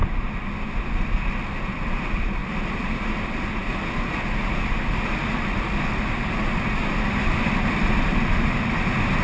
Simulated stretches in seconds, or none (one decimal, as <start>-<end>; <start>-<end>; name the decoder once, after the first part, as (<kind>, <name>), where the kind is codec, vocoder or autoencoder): none